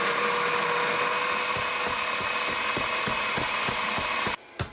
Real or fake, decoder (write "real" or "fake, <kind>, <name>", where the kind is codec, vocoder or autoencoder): real